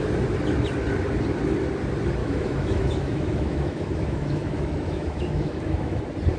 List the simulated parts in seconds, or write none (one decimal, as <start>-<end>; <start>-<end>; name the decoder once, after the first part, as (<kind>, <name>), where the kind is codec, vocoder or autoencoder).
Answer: 2.2-6.0 (autoencoder, DAC-VAE)